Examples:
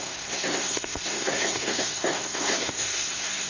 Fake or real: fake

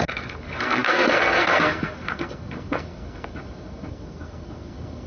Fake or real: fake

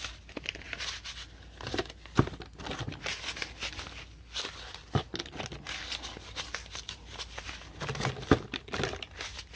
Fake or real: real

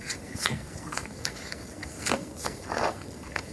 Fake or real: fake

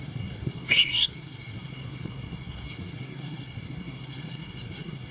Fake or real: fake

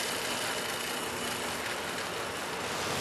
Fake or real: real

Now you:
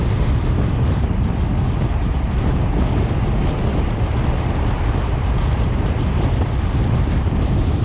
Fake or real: real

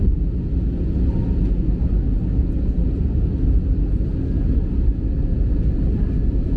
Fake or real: real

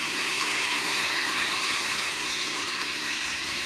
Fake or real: fake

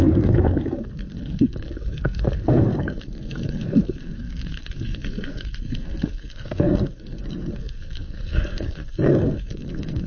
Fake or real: fake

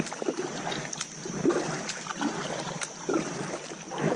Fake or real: real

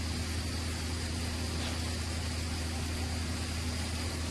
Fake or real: real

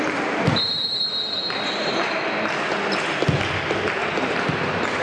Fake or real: real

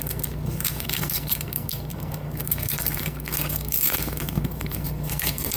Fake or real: fake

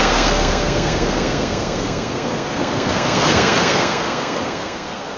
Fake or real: fake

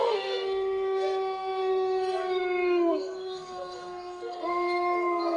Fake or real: fake